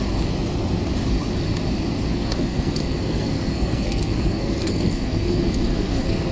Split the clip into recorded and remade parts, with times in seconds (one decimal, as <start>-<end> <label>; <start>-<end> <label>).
0.0-2.1 recorded; 2.1-6.3 remade